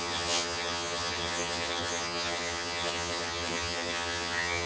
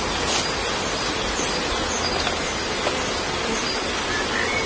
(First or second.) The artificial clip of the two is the first